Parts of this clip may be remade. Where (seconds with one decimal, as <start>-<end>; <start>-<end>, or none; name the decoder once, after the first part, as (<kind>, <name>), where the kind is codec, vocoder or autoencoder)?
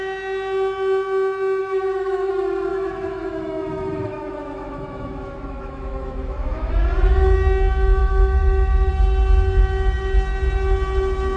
1.6-2.3 (autoencoder, DAC-VAE); 2.7-6.7; 8.0-8.9